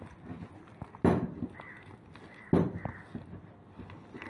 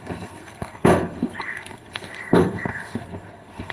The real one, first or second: first